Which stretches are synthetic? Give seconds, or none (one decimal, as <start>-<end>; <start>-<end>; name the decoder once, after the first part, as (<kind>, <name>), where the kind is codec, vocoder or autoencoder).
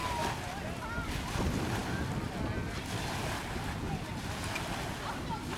none